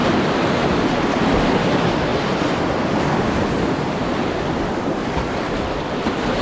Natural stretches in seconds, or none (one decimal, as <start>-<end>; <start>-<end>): 0.0-6.4